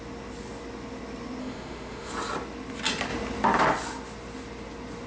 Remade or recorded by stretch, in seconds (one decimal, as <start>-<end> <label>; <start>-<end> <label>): 0.0-1.4 recorded; 1.4-2.1 remade; 2.1-5.1 recorded